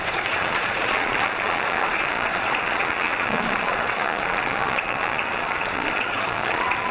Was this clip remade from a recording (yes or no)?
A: yes